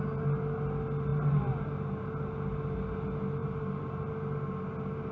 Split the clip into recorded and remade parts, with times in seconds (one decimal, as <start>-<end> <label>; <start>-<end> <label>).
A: 0.0-3.4 recorded; 3.4-4.1 remade; 4.1-5.1 recorded